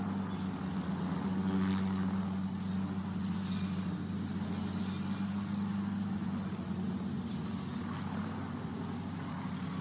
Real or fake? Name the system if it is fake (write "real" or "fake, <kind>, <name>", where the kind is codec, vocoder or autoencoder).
real